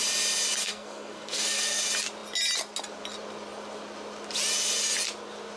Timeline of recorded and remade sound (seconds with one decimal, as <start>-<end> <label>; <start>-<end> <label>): 0.0-0.6 recorded; 0.6-1.8 remade; 1.8-5.6 recorded